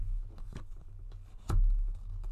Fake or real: real